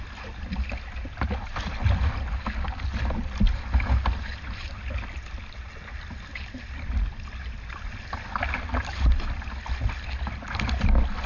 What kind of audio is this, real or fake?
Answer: real